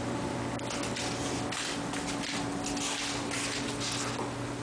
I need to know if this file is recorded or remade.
recorded